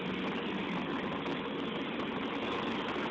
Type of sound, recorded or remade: recorded